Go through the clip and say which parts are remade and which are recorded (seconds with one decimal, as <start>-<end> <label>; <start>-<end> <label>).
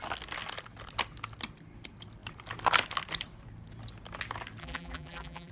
0.0-4.6 recorded; 4.6-5.5 remade